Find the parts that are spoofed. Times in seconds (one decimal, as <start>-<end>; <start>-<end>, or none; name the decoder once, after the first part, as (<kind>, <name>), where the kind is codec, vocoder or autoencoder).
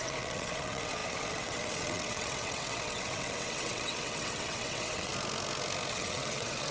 0.0-5.1 (vocoder, WaveNeXt); 5.9-6.7